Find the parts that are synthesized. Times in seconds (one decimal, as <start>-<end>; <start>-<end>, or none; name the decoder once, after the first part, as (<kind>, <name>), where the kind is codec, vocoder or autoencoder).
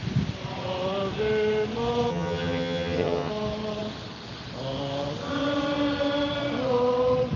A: 2.1-3.3 (vocoder, HiFi-GAN)